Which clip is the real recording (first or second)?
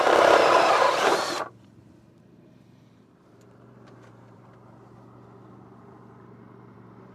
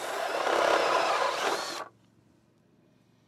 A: second